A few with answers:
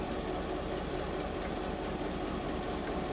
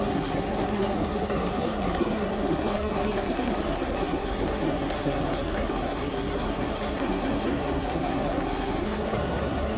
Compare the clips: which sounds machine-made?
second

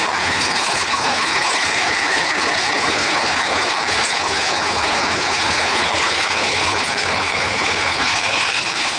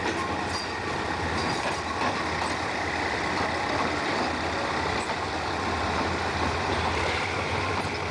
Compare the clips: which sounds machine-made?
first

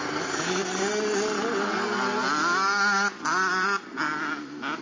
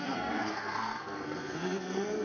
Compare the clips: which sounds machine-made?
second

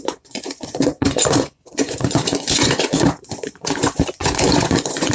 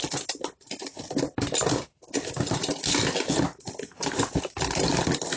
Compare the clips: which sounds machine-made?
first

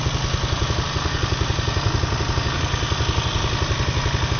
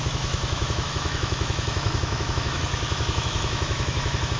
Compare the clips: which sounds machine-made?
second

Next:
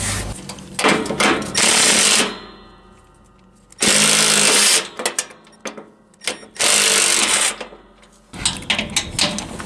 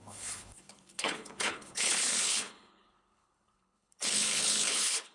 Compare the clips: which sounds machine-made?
second